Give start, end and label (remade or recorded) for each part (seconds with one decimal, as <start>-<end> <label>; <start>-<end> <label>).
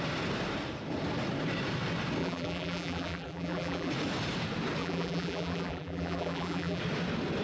0.0-2.2 recorded; 2.2-3.9 remade; 3.9-4.8 recorded; 4.8-6.8 remade; 6.8-7.4 recorded